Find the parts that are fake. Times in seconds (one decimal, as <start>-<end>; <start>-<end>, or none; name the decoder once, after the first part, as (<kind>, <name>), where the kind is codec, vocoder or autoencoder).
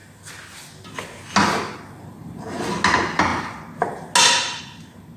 none